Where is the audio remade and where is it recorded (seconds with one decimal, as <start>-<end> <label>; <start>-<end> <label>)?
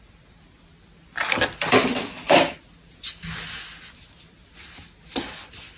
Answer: 0.0-5.8 recorded